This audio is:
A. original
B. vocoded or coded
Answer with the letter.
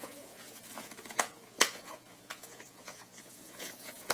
B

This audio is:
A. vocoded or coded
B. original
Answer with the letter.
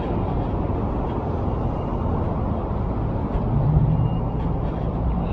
B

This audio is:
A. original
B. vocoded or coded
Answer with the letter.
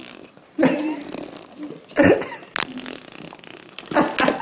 A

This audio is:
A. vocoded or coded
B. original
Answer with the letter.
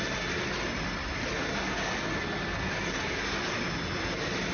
B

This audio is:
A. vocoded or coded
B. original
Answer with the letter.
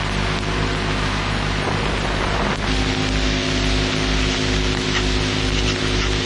B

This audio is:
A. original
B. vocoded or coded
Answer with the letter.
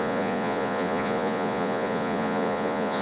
B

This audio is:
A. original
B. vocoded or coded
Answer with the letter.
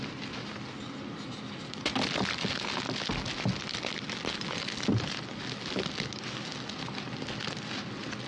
A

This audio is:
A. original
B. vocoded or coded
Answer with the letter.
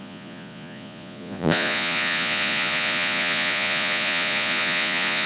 B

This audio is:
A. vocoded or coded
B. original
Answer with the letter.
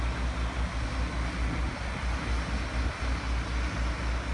B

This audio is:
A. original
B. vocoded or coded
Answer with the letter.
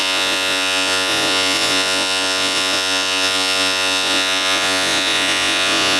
B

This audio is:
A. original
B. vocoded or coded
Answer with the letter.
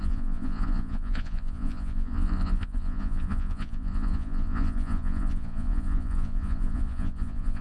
B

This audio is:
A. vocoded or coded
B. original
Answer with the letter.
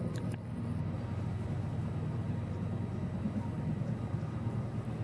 B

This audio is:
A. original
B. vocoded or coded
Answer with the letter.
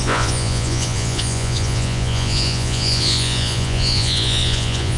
B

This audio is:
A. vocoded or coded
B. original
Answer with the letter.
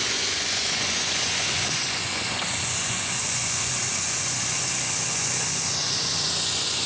A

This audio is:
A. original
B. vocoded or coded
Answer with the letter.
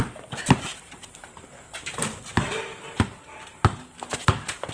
A